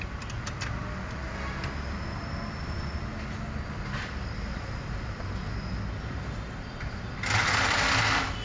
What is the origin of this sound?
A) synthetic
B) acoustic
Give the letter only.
B